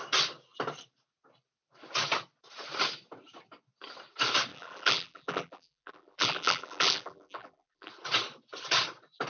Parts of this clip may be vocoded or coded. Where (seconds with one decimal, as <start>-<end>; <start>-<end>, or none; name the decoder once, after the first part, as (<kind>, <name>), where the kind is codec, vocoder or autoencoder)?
4.5-7.9 (vocoder, BigVGAN v2)